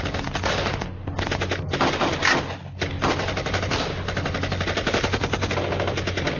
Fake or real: real